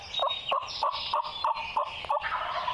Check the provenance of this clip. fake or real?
real